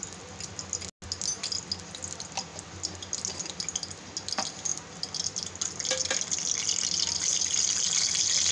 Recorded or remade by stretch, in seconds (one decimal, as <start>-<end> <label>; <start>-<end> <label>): 0.0-8.5 recorded